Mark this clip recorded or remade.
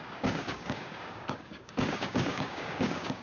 remade